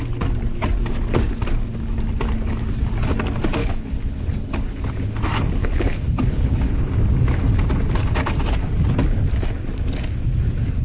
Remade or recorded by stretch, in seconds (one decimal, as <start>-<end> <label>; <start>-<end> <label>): 0.0-3.6 recorded; 3.6-5.1 remade; 5.1-5.6 recorded; 5.6-6.8 remade; 6.8-10.8 recorded